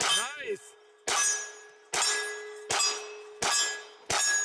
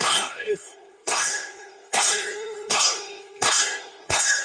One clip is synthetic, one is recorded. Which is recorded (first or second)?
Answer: first